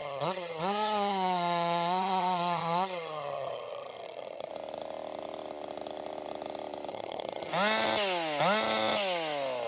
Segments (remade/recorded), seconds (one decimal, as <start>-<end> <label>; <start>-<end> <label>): 0.0-4.5 remade; 4.5-6.9 recorded; 6.9-7.5 remade; 7.5-9.7 recorded